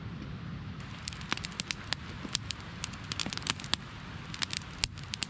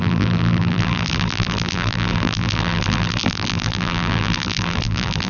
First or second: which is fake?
second